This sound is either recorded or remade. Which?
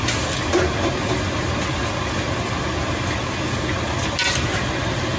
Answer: recorded